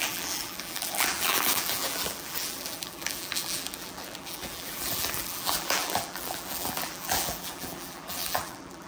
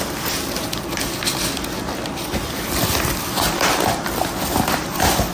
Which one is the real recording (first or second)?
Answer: second